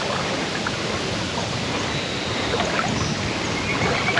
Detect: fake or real real